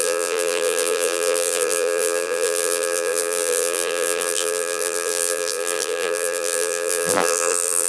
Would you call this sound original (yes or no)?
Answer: no